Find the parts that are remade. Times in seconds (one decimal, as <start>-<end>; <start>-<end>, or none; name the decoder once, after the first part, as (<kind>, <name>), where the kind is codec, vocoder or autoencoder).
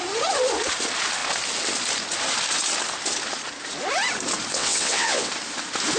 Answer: 4.5-5.3 (vocoder, WaveNeXt)